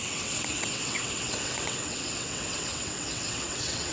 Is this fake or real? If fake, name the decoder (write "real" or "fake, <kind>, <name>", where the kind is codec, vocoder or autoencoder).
fake, vocoder, WaveNeXt